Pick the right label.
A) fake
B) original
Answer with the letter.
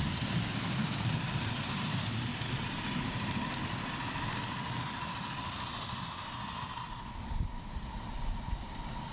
B